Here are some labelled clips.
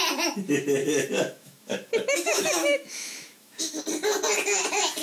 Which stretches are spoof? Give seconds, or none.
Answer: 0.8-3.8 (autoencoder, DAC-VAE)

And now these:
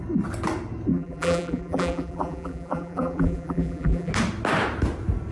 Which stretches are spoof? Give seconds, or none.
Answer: 0.9-4.1 (vocoder, BigVGAN v2)

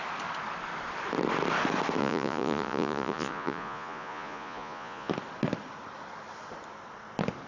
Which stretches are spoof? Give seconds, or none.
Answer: 2.0-5.1 (vocoder, Vocos)

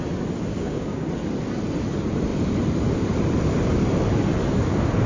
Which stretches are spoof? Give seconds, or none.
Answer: 0.5-1.1 (codec, DAC)

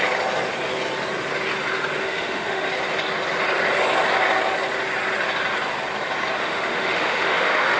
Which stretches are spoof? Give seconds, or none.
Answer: 2.0-2.7 (autoencoder, DAC-VAE); 6.4-7.8

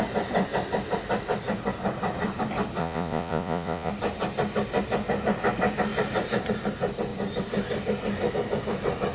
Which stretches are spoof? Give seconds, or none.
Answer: 2.8-3.9 (vocoder, Vocos)

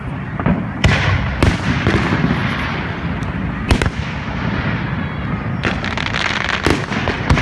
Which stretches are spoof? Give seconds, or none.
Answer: none